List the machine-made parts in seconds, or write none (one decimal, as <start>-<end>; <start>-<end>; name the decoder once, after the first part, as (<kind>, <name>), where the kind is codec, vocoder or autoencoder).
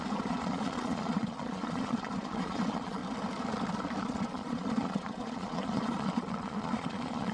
0.0-3.0 (vocoder, Vocos); 4.0-7.3